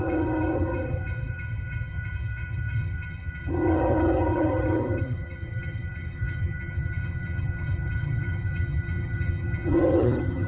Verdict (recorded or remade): remade